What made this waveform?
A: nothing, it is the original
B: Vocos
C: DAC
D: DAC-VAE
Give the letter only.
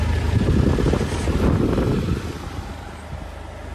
A